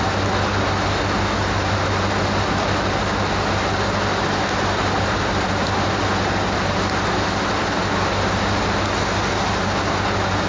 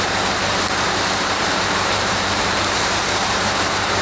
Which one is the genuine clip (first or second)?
first